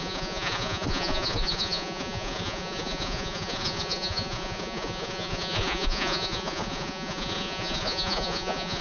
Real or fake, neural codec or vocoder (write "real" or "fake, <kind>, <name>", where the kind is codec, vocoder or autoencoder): fake, vocoder, Vocos